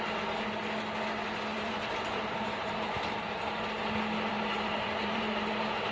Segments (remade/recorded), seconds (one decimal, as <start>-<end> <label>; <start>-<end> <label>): 0.0-1.5 recorded; 1.5-2.7 remade; 2.7-4.3 recorded; 4.3-5.3 remade; 5.3-5.9 recorded